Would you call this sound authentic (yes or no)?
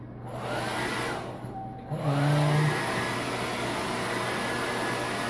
yes